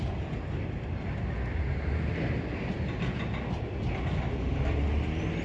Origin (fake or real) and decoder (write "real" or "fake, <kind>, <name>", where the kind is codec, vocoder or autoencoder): real